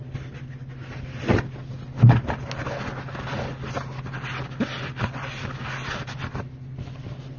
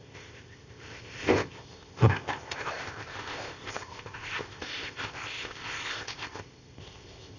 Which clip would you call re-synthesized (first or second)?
second